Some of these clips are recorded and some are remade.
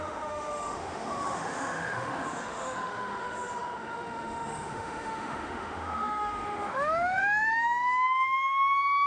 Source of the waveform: remade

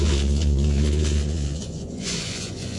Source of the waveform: remade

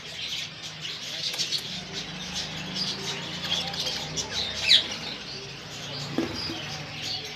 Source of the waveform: recorded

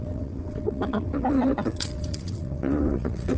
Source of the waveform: remade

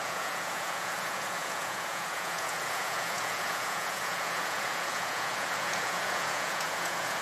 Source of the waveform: remade